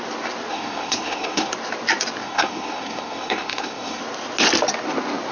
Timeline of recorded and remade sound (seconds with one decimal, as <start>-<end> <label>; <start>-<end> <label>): 0.0-0.5 recorded; 0.5-1.5 remade; 1.5-2.2 recorded; 2.2-4.0 remade; 4.0-5.3 recorded